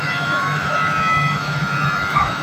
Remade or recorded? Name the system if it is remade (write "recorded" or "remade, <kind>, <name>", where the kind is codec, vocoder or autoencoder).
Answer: remade, autoencoder, DAC-VAE